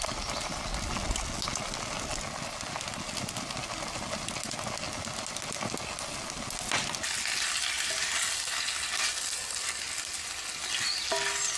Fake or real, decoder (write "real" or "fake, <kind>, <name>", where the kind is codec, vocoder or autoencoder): real